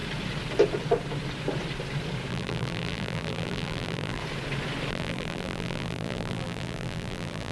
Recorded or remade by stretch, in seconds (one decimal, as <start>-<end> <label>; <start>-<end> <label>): 0.0-2.3 recorded; 2.3-4.2 remade; 4.2-4.9 recorded; 4.9-7.5 remade